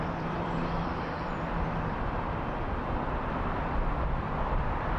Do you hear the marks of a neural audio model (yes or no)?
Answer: yes